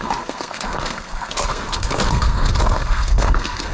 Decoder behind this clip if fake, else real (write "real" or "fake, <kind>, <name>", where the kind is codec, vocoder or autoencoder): fake, codec, SNAC